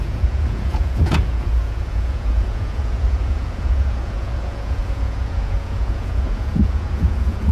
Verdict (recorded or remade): remade